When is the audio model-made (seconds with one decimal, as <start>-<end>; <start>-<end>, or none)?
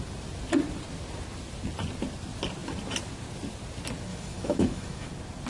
4.1-5.1